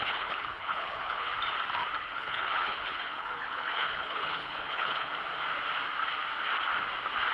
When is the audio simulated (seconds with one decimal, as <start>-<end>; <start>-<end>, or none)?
0.0-1.3; 2.0-5.1